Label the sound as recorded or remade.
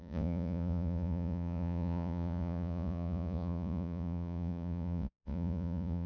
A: remade